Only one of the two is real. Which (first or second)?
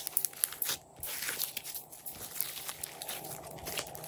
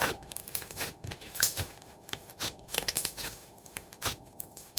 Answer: first